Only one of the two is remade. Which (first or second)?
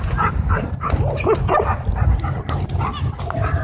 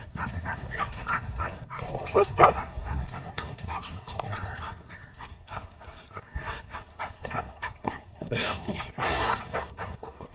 second